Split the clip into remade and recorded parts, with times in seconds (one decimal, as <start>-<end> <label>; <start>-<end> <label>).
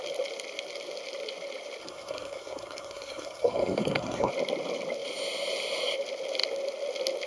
0.0-1.8 recorded; 1.8-4.3 remade; 4.3-7.3 recorded